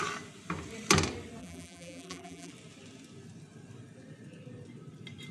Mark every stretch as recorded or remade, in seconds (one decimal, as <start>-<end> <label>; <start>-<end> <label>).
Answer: 0.0-1.4 recorded; 1.4-2.5 remade; 2.5-5.3 recorded